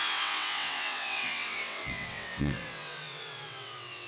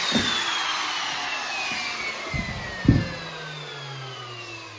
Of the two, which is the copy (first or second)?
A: first